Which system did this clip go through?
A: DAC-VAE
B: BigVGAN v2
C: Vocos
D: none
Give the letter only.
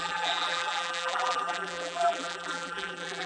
B